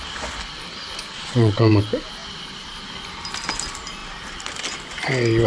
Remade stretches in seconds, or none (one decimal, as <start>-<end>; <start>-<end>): 1.1-1.7